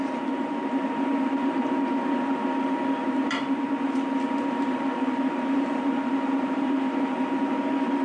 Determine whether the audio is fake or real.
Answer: fake